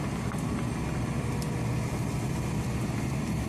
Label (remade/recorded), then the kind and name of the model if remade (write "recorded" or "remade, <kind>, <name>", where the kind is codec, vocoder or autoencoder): recorded